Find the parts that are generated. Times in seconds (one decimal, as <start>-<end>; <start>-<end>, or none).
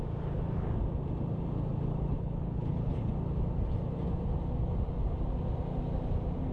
1.9-3.1